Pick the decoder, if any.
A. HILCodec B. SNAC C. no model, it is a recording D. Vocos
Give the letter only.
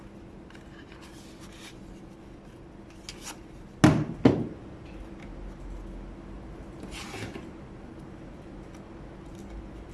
C